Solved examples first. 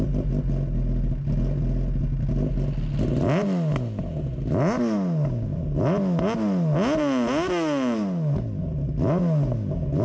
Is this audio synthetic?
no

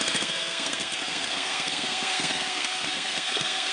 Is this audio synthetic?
yes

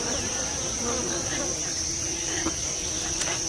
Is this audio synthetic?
no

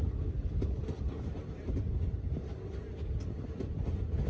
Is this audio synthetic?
no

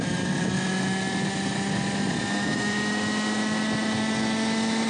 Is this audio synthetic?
no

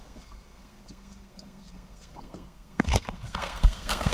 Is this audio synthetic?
yes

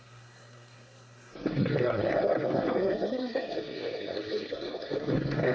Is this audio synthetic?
yes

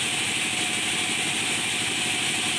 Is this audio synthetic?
no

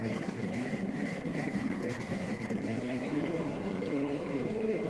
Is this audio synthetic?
yes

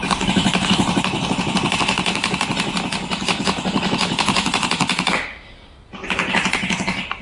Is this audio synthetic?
no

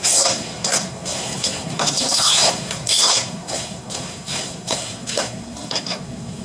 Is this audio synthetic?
yes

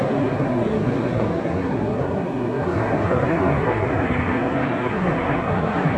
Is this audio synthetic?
yes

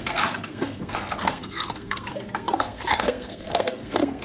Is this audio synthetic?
yes